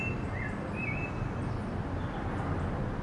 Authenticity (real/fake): real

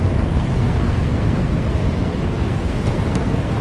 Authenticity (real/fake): fake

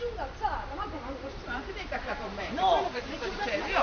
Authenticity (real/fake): fake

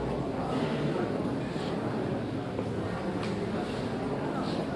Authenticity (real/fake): real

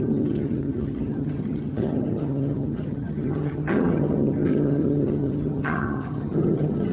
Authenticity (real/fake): fake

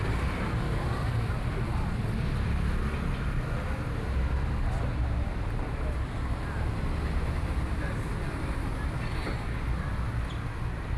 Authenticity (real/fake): real